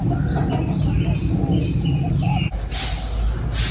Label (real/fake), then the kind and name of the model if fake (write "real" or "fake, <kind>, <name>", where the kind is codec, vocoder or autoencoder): real